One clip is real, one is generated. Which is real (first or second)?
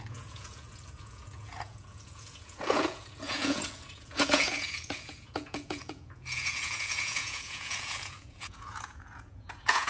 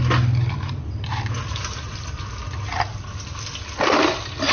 second